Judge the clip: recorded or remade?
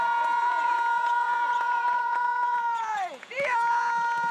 remade